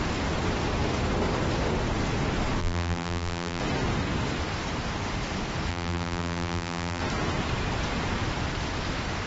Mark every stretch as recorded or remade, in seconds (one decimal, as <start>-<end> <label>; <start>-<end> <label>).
0.0-2.6 recorded; 2.6-3.6 remade; 3.6-5.7 recorded; 5.7-7.0 remade; 7.0-9.3 recorded